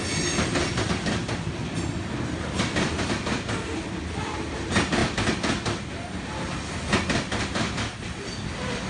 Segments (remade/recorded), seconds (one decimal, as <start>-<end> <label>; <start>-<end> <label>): 0.0-8.9 recorded

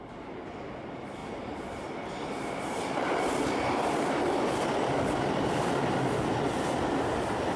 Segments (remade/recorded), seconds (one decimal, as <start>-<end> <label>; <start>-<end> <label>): 0.0-7.6 recorded